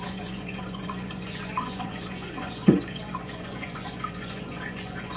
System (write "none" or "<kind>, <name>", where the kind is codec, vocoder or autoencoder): vocoder, Vocos